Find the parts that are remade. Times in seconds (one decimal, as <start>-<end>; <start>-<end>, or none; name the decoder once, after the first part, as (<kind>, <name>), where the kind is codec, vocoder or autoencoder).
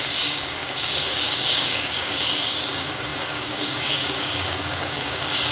0.0-5.5 (codec, DAC)